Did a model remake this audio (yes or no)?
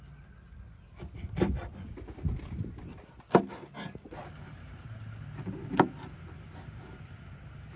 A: no